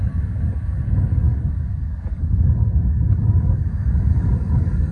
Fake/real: fake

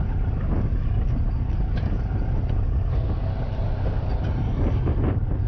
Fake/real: real